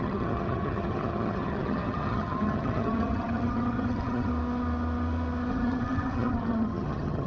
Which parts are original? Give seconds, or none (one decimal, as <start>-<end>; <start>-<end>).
4.3-5.5